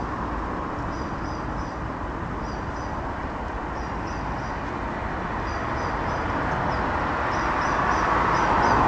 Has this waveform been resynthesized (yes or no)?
no